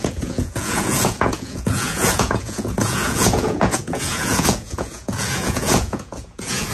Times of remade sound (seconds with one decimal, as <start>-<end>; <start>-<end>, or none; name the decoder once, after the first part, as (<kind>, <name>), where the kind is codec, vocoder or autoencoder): 0.0-6.7 (vocoder, Vocos)